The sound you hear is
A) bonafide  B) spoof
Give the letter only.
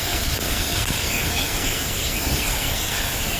B